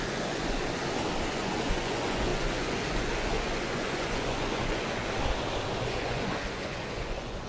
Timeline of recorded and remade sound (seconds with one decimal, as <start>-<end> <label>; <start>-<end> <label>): 0.0-0.6 remade; 0.6-1.3 recorded; 1.3-5.0 remade; 5.0-5.8 recorded; 5.8-7.5 remade

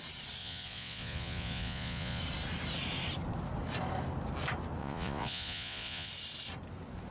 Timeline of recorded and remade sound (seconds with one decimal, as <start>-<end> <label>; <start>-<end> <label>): 0.0-0.4 recorded; 0.4-2.2 remade; 2.2-4.8 recorded; 4.8-6.1 remade; 6.1-7.1 recorded

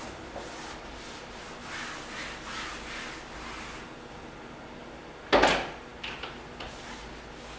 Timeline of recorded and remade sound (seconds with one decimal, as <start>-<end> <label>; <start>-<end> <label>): 0.0-7.6 recorded

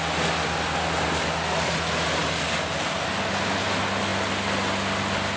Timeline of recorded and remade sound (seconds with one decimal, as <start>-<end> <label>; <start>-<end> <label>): 0.0-5.4 recorded

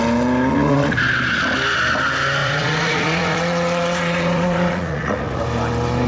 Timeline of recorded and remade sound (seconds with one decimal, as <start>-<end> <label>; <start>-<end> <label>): 0.0-0.5 recorded; 0.5-1.0 remade; 1.0-2.4 recorded; 2.4-5.4 remade; 5.4-6.1 recorded